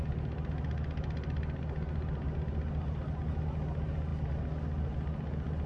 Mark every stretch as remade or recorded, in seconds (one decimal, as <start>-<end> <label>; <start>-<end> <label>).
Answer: 0.0-5.7 recorded